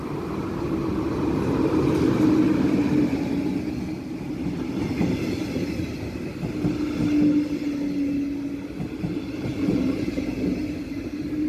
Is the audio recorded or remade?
recorded